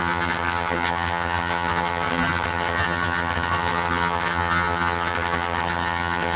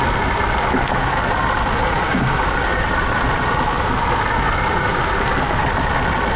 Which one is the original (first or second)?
second